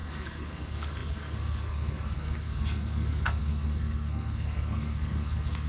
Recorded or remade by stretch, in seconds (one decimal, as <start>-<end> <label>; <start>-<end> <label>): 0.0-5.7 remade